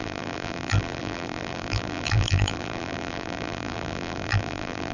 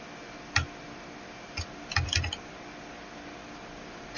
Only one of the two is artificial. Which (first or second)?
first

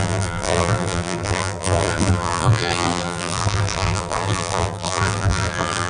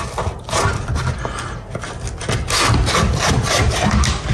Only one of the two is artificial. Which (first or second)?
first